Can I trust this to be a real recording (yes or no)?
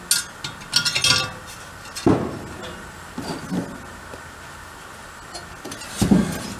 yes